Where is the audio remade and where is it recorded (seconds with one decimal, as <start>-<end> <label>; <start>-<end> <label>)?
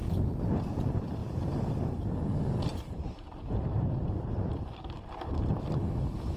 0.0-2.7 recorded; 2.7-5.5 remade; 5.5-6.4 recorded